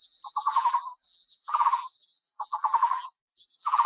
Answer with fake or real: fake